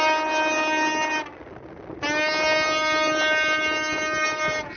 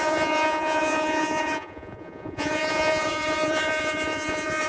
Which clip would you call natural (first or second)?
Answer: first